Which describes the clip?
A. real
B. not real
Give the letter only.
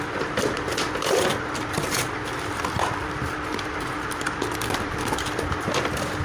B